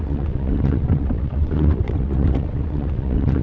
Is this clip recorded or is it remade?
remade